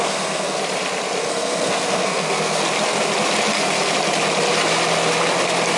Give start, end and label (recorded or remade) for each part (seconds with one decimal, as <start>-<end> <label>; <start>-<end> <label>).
0.0-0.6 remade; 0.6-1.2 recorded; 1.2-2.6 remade; 2.6-5.8 recorded